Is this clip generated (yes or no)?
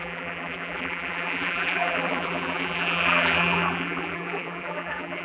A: yes